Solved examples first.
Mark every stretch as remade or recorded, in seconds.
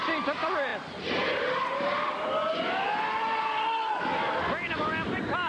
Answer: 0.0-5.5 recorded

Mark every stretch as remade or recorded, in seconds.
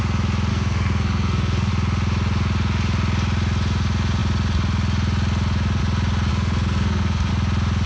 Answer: 0.0-0.5 recorded; 0.5-1.7 remade; 1.7-6.3 recorded; 6.3-7.3 remade; 7.3-7.9 recorded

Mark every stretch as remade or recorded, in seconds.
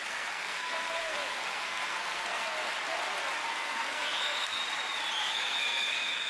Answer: 0.0-2.7 remade; 2.7-3.5 recorded; 3.5-4.6 remade; 4.6-5.2 recorded; 5.2-6.3 remade